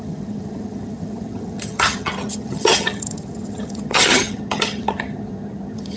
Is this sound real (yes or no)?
no